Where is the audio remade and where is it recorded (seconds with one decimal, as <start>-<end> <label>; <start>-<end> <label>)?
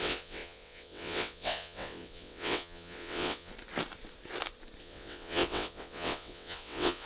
0.0-3.5 remade; 3.5-4.8 recorded; 4.8-7.1 remade